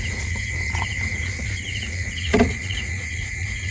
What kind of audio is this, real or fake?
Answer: fake